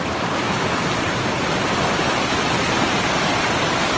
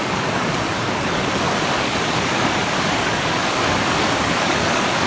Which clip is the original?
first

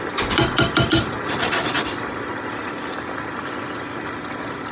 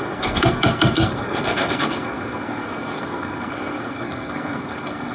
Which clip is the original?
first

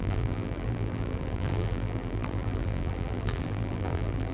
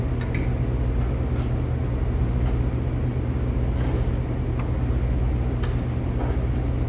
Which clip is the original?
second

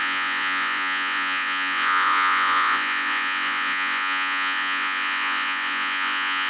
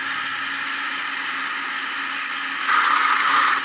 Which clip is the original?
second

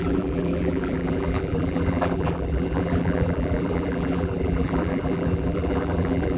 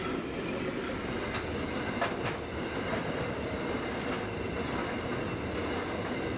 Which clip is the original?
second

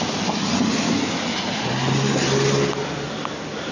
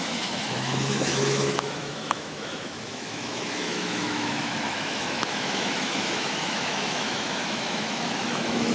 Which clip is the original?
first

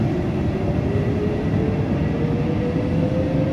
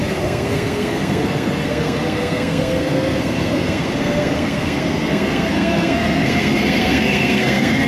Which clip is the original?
first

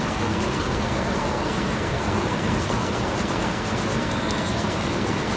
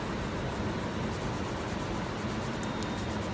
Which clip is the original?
second